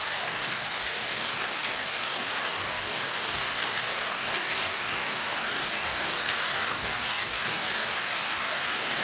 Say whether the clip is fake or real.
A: fake